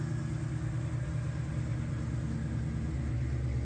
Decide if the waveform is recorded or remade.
recorded